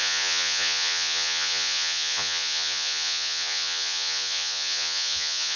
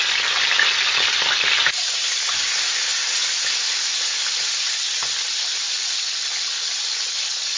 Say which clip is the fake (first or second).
first